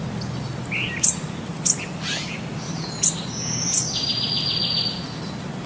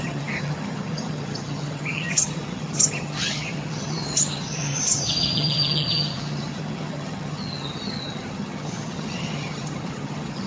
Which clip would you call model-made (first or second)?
second